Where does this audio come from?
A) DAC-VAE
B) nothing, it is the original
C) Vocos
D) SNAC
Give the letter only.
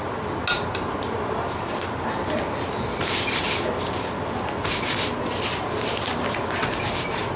B